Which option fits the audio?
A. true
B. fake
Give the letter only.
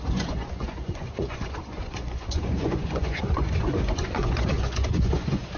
B